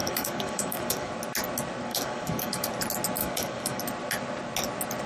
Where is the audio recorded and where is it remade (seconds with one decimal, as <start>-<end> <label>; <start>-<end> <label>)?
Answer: 0.0-1.1 remade; 1.1-1.9 recorded; 1.9-2.7 remade; 2.7-3.2 recorded; 3.2-3.8 remade; 3.8-5.1 recorded